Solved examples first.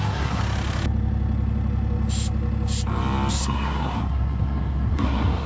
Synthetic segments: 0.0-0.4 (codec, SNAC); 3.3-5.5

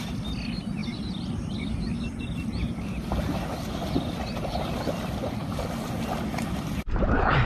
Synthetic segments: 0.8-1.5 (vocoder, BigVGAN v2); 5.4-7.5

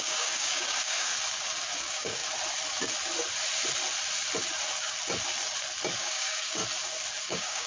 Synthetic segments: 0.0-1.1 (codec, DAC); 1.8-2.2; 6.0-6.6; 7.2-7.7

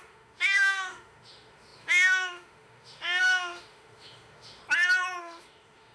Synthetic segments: 0.0-4.6 (autoencoder, DAC-VAE); 5.2-5.9

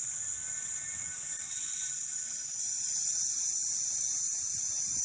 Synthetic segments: 1.3-1.9 (vocoder, BigVGAN v2); 3.1-5.0

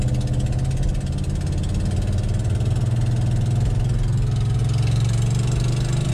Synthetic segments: none

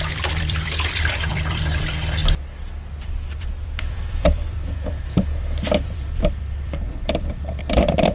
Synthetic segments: 0.0-2.2 (vocoder, BigVGAN v2); 3.1-8.1

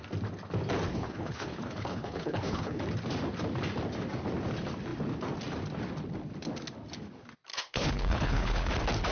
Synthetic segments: 0.9-2.8 (codec, HILCodec); 7.5-8.7